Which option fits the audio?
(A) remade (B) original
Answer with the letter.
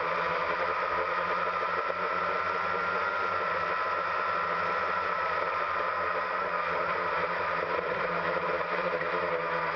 B